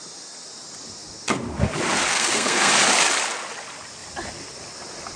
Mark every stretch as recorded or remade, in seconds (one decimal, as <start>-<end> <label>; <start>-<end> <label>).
0.0-2.1 recorded; 2.1-2.7 remade; 2.7-5.2 recorded